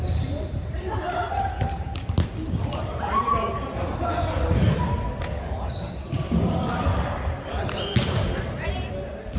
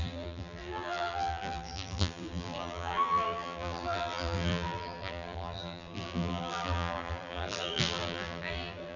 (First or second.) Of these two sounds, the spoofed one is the second